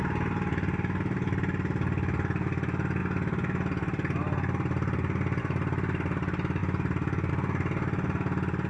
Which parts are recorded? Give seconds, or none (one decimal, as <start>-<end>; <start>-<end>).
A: 0.0-8.7

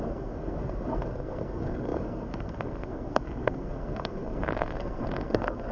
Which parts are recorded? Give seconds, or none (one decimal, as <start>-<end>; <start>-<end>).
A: none

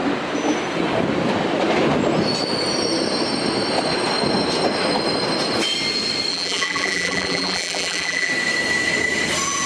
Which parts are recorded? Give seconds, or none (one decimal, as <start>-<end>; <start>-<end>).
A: 0.0-6.3; 8.3-9.7

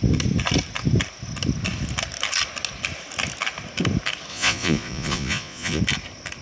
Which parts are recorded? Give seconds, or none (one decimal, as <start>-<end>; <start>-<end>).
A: 0.0-4.3; 5.8-6.4

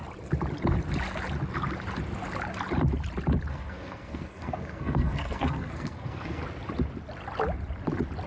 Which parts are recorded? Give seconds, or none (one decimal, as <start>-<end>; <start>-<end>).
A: 0.0-3.5; 6.4-8.3

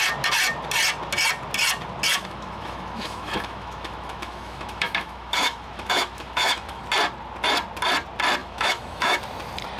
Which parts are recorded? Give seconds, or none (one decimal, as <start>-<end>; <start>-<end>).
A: 0.0-2.1; 6.8-8.4; 9.2-9.8